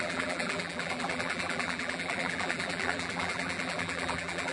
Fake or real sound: fake